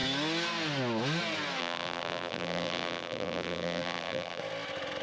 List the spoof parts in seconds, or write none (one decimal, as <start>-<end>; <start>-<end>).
1.6-4.4